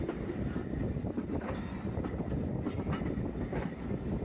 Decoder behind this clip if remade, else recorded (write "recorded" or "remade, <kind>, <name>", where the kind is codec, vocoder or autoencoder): remade, vocoder, BigVGAN v2